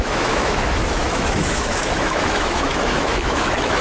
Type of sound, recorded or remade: remade